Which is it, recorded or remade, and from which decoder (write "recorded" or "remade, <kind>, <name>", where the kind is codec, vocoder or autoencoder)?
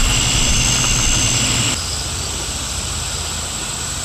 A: recorded